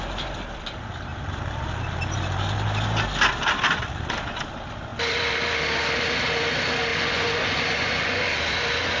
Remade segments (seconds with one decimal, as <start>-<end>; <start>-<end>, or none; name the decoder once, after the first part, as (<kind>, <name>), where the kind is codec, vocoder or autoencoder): 6.9-8.2 (vocoder, Vocos)